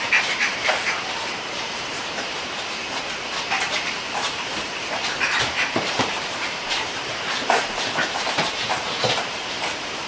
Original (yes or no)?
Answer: no